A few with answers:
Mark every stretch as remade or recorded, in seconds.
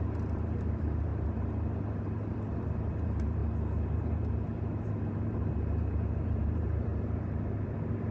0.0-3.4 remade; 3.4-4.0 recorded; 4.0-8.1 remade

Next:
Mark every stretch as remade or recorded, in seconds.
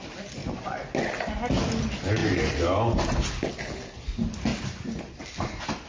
0.0-5.9 recorded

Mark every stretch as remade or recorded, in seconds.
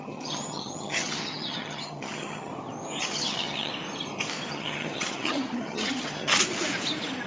0.0-2.5 remade; 2.5-3.0 recorded; 3.0-3.7 remade; 3.7-4.5 recorded; 4.5-6.3 remade; 6.3-7.3 recorded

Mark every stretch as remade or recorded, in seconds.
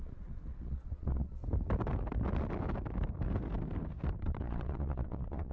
0.0-1.4 remade; 1.4-4.2 recorded; 4.2-5.5 remade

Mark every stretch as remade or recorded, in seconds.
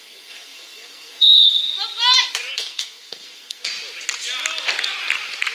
0.0-1.6 remade; 1.6-2.5 recorded; 2.5-3.7 remade; 3.7-5.5 recorded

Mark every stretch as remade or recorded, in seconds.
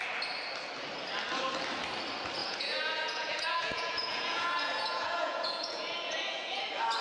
0.0-2.4 recorded; 2.4-6.6 remade; 6.6-7.0 recorded